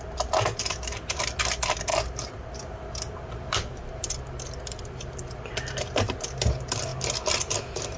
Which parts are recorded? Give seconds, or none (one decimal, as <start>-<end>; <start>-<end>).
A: 0.0-6.9